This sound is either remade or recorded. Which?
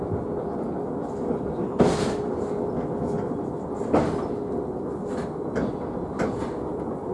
recorded